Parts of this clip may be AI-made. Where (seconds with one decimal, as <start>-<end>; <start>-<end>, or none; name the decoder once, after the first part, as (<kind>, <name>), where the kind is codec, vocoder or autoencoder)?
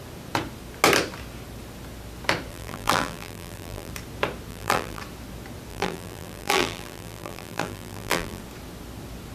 2.5-3.9 (vocoder, BigVGAN v2); 4.5-5.0; 5.7-8.4